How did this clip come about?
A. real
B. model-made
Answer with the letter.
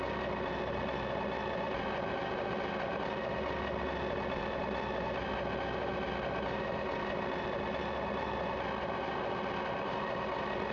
A